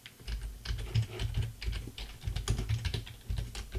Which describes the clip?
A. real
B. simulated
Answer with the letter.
A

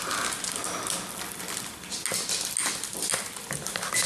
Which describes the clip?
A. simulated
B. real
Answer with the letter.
B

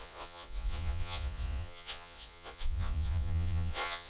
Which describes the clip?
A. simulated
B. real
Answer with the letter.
A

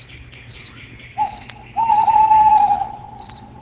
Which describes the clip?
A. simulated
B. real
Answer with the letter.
A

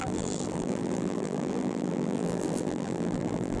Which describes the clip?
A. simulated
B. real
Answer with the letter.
A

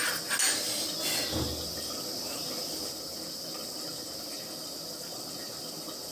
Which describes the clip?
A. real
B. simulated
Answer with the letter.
A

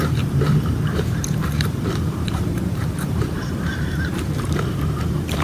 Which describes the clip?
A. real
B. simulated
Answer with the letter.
B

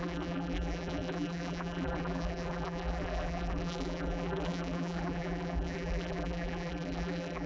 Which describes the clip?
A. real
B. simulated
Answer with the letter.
B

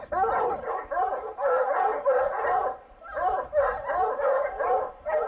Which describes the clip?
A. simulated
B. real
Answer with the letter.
B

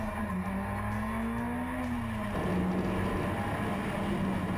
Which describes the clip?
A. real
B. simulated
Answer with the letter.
A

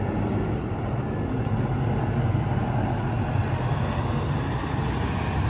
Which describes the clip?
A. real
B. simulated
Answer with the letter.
A